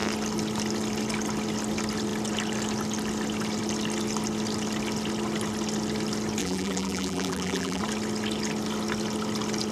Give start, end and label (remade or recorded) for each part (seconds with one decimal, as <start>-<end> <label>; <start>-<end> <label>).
0.0-6.4 recorded; 6.4-7.8 remade; 7.8-9.7 recorded